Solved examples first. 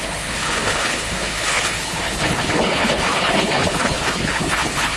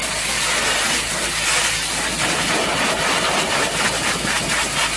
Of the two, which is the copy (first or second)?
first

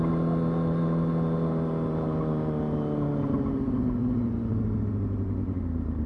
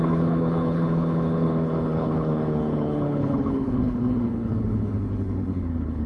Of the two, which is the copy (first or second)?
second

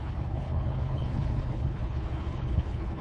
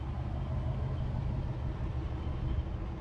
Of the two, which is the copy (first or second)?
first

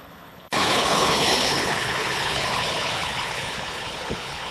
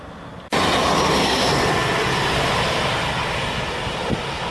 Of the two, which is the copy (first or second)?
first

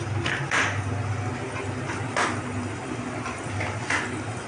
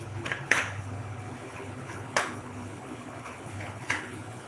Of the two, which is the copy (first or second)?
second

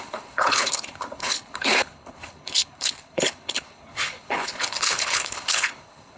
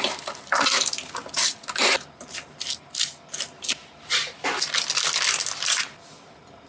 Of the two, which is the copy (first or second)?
first